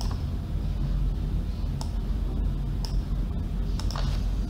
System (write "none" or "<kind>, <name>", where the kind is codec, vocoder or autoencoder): none